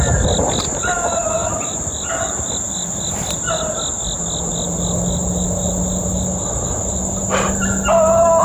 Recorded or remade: recorded